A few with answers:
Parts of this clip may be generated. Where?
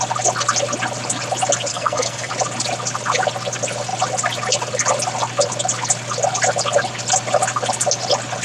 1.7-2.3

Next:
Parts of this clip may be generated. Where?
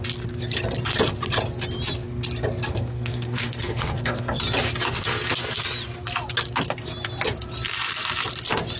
2.7-4.4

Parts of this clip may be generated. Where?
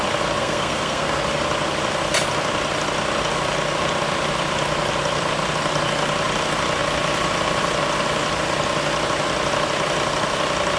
0.4-1.2